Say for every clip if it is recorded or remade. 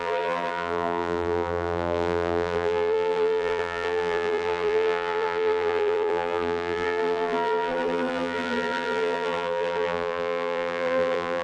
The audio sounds remade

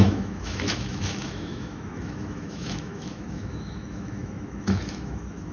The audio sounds remade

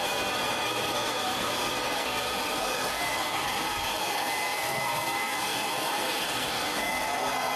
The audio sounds remade